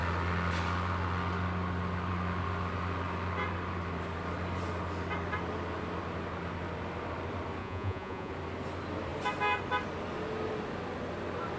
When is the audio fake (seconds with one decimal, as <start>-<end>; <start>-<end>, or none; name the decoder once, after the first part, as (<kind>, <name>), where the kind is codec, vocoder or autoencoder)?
7.6-8.3 (vocoder, Vocos)